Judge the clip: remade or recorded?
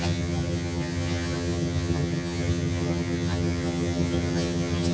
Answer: remade